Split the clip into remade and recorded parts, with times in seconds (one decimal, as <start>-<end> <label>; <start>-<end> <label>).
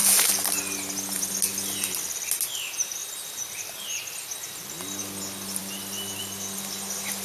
0.0-3.0 recorded; 3.0-4.3 remade; 4.3-5.6 recorded; 5.6-6.2 remade; 6.2-7.2 recorded